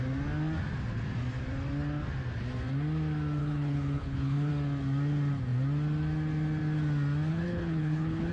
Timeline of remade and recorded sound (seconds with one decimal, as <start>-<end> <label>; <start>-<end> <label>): 0.0-3.4 recorded; 3.4-4.5 remade; 4.5-7.3 recorded; 7.3-8.3 remade